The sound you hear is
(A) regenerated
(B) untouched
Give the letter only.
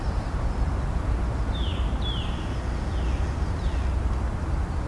B